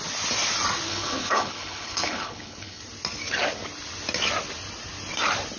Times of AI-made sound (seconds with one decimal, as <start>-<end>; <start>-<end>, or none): 0.9-2.8